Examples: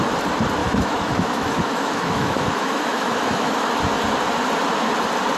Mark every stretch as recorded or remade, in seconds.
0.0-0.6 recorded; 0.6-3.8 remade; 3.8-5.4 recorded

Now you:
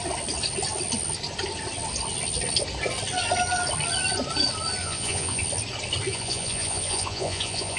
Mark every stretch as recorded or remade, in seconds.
0.0-4.8 recorded; 4.8-5.4 remade; 5.4-6.1 recorded; 6.1-7.8 remade

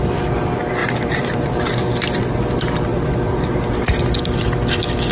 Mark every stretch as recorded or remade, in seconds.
0.0-0.8 recorded; 0.8-1.6 remade; 1.6-2.9 recorded; 2.9-4.0 remade; 4.0-5.1 recorded

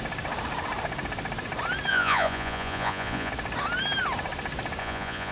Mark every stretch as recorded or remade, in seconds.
0.0-1.9 recorded; 1.9-3.3 remade; 3.3-4.8 recorded; 4.8-5.3 remade

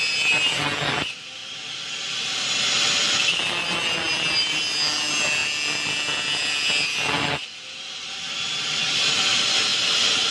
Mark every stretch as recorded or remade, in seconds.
0.0-10.3 recorded

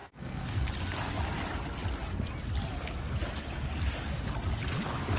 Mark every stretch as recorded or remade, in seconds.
0.0-0.7 remade; 0.7-5.2 recorded

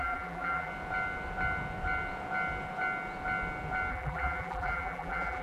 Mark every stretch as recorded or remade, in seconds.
0.0-0.7 remade; 0.7-3.9 recorded; 3.9-5.4 remade

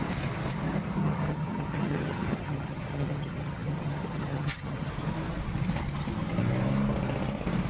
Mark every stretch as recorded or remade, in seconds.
0.0-1.0 recorded; 1.0-4.9 remade; 4.9-7.7 recorded